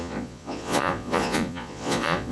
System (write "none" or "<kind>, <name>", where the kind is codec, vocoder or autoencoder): vocoder, Vocos